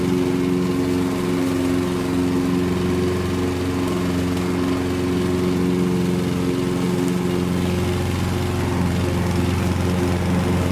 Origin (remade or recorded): recorded